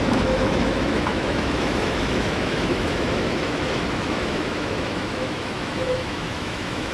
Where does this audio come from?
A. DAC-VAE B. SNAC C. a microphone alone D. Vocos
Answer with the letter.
A